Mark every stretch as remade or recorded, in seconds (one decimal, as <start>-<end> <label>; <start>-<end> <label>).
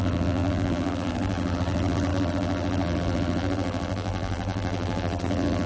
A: 0.0-5.7 remade